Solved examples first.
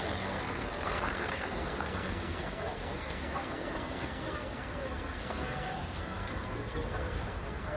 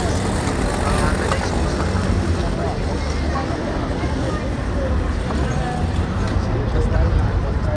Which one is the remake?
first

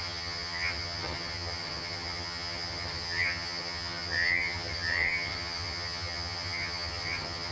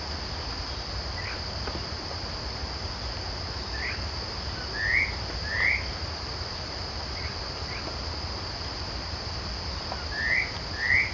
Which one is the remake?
first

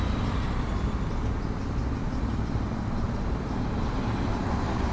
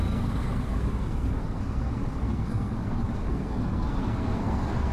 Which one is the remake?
second